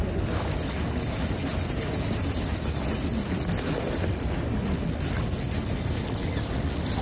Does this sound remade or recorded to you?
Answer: recorded